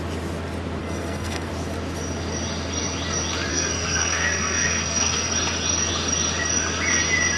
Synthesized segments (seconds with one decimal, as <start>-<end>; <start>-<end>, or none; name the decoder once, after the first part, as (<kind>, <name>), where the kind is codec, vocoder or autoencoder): 0.8-1.5 (codec, SNAC); 3.5-5.3